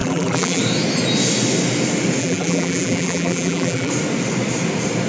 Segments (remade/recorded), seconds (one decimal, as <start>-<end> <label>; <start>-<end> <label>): 0.0-0.6 remade; 0.6-2.2 recorded; 2.2-3.9 remade; 3.9-5.1 recorded